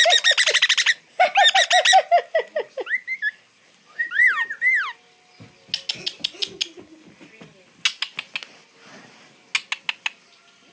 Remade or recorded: recorded